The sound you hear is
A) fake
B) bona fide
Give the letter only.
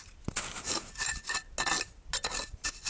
B